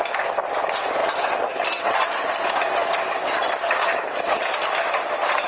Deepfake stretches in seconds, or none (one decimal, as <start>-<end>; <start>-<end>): 1.0-1.7